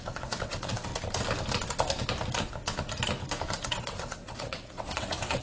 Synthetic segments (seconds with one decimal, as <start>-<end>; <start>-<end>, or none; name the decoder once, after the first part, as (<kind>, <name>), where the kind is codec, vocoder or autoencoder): 0.0-0.9 (vocoder, WaveNeXt); 3.7-5.4

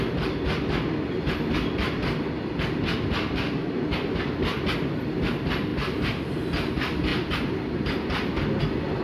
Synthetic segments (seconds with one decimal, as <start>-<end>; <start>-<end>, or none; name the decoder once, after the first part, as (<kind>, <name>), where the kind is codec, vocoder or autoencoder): none

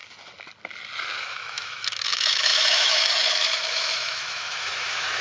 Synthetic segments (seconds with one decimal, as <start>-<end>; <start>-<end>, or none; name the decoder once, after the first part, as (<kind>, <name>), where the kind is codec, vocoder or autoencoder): 1.2-5.2 (autoencoder, DAC-VAE)

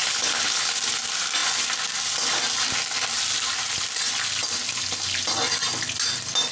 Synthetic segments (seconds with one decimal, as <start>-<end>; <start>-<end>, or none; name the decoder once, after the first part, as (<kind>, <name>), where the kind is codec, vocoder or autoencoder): 0.0-0.7 (codec, HILCodec)

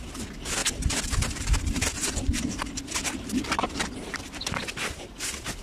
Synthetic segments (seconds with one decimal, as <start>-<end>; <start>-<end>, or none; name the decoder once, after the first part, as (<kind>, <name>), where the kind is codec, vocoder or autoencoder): 0.6-4.0 (vocoder, BigVGAN v2)

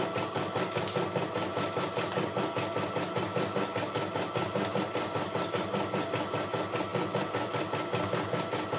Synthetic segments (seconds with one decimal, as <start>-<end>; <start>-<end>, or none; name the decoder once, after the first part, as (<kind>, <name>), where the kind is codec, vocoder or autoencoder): none

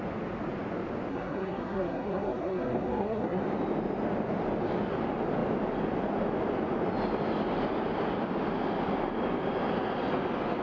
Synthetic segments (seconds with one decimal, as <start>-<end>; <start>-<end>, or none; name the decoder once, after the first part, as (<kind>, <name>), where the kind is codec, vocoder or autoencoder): 1.1-3.4 (codec, SNAC)

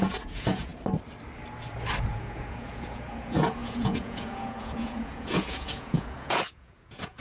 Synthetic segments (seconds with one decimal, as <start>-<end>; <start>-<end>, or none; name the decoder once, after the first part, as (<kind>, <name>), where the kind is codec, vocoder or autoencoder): 0.0-0.7 (vocoder, Vocos); 2.0-7.2